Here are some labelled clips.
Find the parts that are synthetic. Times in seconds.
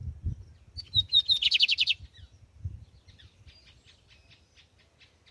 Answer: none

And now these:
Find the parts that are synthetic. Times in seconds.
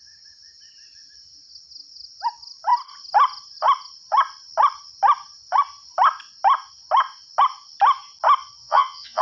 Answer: 8.6-9.2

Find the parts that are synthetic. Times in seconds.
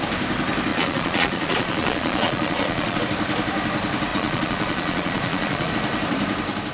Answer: 0.7-3.0; 4.1-5.7